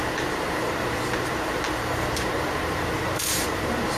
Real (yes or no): no